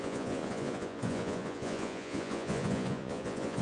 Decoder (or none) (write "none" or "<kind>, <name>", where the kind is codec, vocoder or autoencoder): vocoder, Vocos